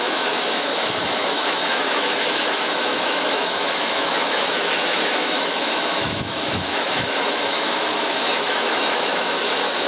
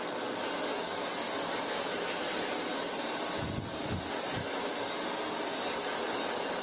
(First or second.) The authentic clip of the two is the second